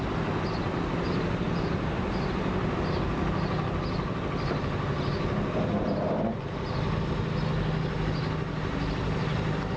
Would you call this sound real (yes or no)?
yes